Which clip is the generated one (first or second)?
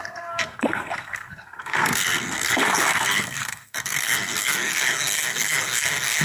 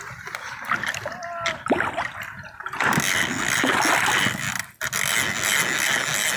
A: first